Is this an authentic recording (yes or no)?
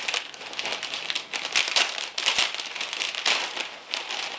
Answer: yes